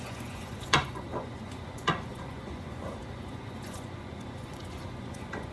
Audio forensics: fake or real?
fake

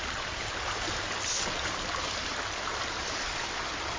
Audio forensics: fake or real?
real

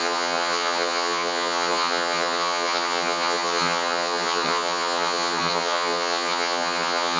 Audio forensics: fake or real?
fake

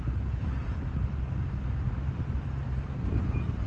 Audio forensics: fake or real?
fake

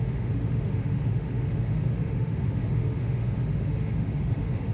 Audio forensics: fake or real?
fake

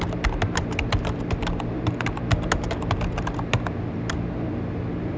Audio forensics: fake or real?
real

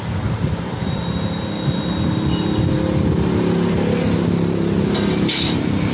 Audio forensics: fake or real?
real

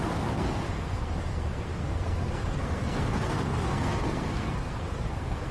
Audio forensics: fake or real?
fake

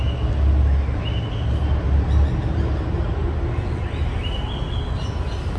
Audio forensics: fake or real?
real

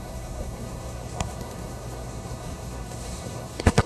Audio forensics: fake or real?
fake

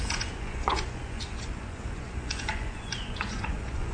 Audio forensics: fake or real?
fake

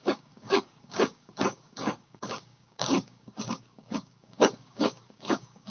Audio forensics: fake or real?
fake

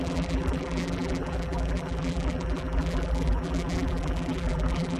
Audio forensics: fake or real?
fake